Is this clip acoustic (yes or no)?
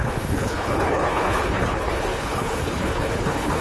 no